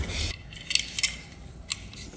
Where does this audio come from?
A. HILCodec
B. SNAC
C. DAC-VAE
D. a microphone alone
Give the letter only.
D